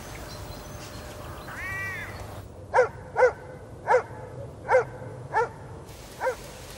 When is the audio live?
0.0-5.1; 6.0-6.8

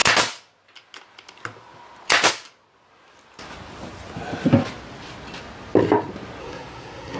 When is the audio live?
0.0-6.4

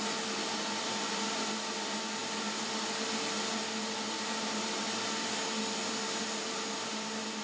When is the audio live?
0.0-7.4

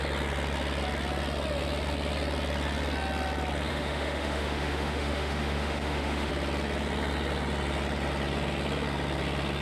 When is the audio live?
0.0-3.7; 6.3-9.6